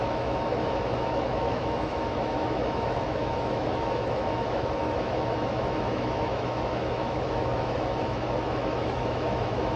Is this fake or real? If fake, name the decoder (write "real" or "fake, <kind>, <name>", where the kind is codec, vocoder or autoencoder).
fake, autoencoder, DAC-VAE